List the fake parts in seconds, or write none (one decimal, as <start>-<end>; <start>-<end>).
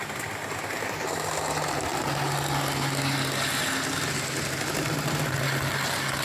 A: none